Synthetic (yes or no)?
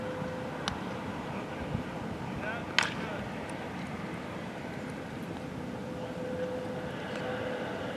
no